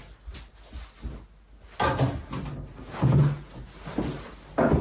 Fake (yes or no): no